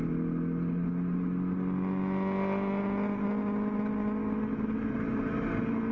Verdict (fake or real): real